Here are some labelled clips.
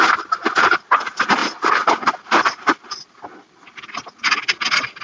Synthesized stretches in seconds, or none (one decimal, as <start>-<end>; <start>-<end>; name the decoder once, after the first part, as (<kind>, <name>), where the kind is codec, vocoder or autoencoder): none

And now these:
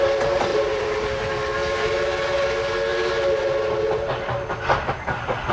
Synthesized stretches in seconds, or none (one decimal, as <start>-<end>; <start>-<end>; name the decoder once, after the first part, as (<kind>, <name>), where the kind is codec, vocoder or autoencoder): 0.5-1.3 (vocoder, BigVGAN v2)

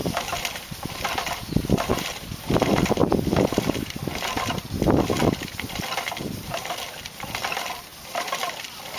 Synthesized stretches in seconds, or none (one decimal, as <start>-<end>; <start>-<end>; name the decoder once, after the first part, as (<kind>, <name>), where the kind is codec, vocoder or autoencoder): 0.0-9.0 (vocoder, BigVGAN v2)

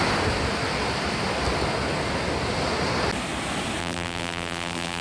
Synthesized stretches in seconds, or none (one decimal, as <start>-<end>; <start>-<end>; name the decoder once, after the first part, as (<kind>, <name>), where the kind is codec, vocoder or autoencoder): 3.8-5.0 (vocoder, BigVGAN v2)

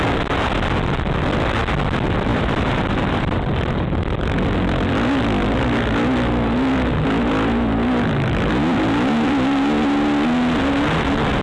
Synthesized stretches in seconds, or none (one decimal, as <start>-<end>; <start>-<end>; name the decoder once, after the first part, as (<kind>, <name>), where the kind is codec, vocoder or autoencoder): 2.3-3.5 (vocoder, BigVGAN v2)

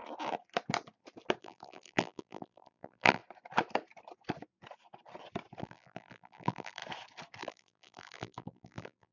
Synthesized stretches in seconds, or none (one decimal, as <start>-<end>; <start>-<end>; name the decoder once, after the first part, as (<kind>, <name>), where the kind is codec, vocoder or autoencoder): 1.4-3.2 (vocoder, BigVGAN v2); 5.6-6.8; 7.4-9.1

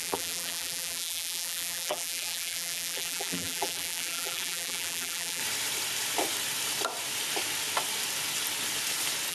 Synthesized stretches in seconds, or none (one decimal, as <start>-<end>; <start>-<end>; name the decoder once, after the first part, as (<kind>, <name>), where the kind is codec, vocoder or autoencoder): 0.0-5.4 (vocoder, BigVGAN v2)